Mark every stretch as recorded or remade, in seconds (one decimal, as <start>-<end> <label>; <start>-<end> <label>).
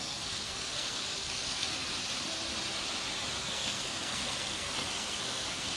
0.0-1.7 remade; 1.7-3.4 recorded; 3.4-5.8 remade